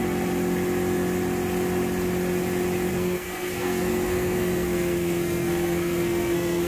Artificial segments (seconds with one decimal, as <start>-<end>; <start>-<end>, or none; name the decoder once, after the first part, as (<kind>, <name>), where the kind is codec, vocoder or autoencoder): 2.9-6.7 (codec, SNAC)